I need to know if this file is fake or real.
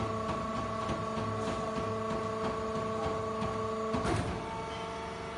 real